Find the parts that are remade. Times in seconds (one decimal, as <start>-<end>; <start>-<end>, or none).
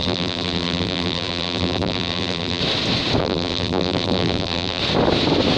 0.0-2.6; 3.2-4.8